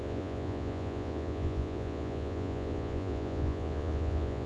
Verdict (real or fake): fake